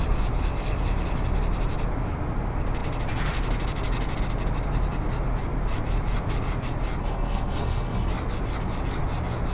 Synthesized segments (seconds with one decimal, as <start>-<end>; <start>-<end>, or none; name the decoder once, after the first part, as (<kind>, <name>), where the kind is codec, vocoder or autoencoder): 7.0-8.1 (codec, SNAC)